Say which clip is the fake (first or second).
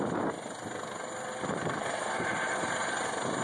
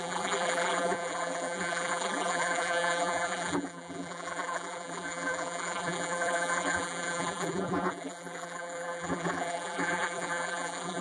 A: second